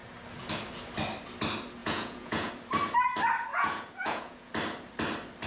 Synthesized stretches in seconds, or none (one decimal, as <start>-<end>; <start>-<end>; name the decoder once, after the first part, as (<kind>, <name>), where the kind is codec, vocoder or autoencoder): 1.8-2.5 (vocoder, Vocos); 3.5-4.5